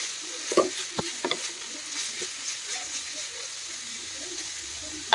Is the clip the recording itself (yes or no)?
no